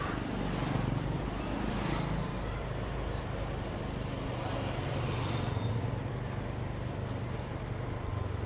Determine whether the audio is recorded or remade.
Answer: recorded